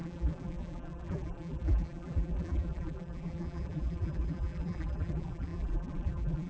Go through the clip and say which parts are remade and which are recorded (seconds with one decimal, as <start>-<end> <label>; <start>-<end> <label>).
0.0-6.5 remade